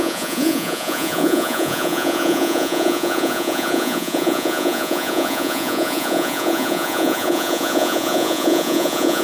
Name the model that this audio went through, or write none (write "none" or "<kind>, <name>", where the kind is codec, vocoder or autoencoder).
vocoder, Vocos